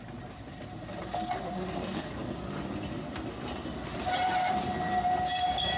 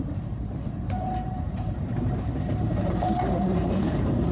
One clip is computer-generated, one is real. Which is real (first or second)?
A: first